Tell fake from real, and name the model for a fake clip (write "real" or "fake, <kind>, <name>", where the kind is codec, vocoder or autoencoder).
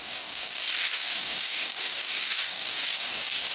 fake, codec, DAC